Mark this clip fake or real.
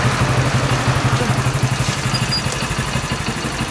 real